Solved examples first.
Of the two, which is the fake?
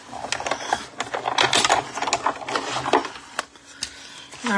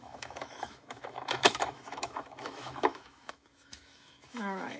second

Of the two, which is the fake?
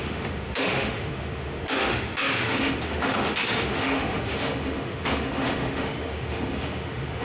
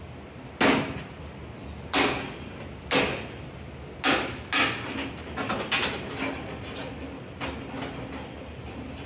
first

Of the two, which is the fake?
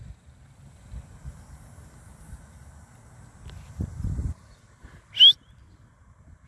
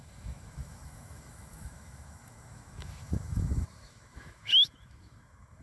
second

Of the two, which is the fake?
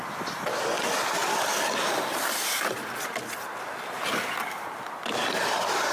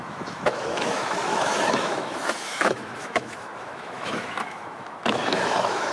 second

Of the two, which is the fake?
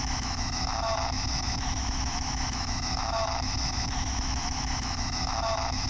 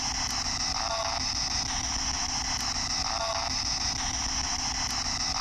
first